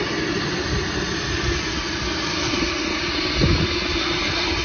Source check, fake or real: real